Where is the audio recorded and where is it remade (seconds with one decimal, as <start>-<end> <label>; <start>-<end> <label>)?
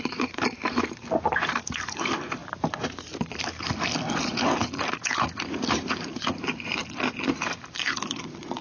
0.0-2.4 remade; 2.4-5.7 recorded; 5.7-6.8 remade; 6.8-7.4 recorded; 7.4-8.6 remade